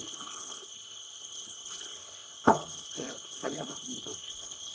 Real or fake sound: fake